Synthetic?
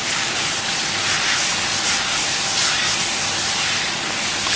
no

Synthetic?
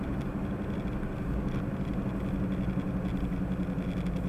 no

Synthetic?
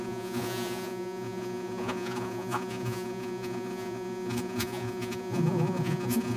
yes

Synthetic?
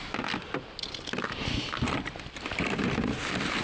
no